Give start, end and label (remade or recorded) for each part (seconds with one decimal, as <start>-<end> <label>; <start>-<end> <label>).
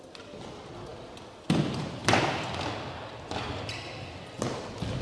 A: 0.0-5.0 recorded